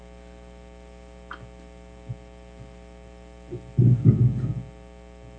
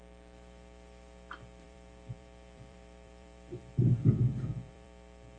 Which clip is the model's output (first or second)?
second